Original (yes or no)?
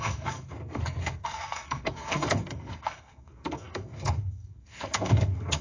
no